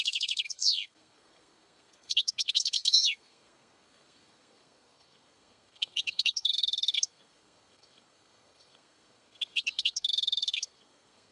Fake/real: fake